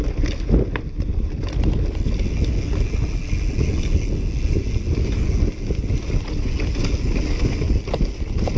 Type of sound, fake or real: real